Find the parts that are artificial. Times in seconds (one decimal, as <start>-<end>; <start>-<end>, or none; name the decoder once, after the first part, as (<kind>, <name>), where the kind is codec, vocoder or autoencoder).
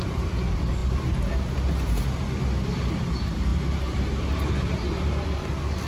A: none